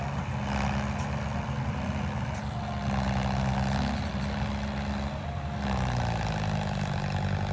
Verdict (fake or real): real